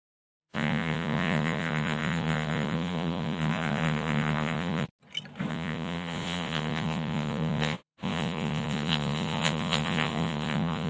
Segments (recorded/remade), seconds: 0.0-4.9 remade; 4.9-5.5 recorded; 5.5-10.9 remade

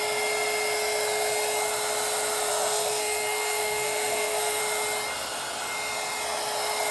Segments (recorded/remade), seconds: 0.0-2.5 recorded; 2.5-4.6 remade; 4.6-6.9 recorded

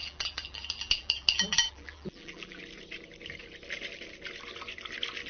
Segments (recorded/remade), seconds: 0.0-2.6 remade; 2.6-5.3 recorded

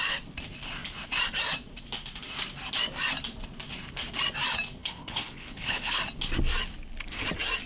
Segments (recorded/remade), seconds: 0.0-4.8 recorded; 4.8-6.0 remade; 6.0-7.7 recorded

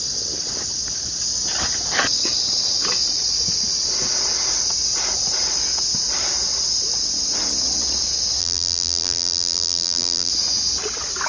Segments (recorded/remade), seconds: 0.0-8.4 recorded; 8.4-10.3 remade; 10.3-11.3 recorded

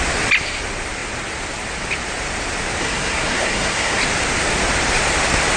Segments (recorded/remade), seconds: 0.0-2.8 recorded; 2.8-4.0 remade; 4.0-5.6 recorded

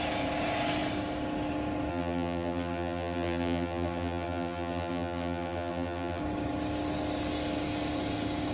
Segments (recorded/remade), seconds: 0.0-1.9 recorded; 1.9-6.2 remade; 6.2-8.5 recorded

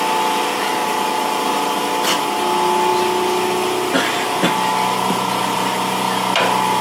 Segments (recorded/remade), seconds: 0.0-6.8 recorded